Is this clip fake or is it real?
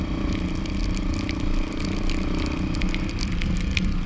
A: real